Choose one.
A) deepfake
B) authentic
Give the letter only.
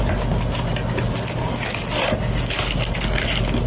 B